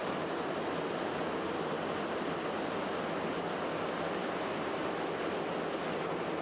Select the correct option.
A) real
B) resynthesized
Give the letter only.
A